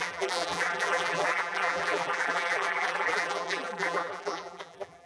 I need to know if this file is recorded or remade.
remade